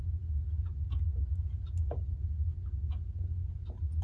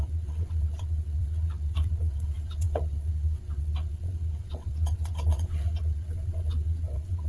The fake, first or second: second